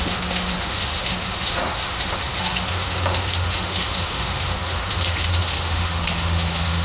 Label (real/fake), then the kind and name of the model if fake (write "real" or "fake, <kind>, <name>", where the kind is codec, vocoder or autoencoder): fake, autoencoder, DAC-VAE